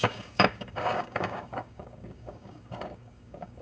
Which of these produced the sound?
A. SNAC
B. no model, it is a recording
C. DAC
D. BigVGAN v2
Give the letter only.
C